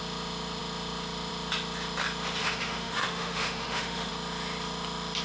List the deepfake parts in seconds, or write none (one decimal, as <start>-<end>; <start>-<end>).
2.4-4.1